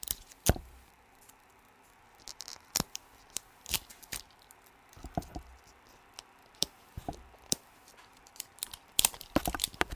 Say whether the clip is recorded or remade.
remade